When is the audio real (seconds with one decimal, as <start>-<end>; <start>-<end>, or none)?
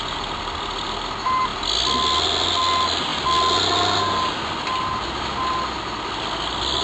0.0-6.8